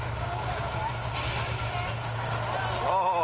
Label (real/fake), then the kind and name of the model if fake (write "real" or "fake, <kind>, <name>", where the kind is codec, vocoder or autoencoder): real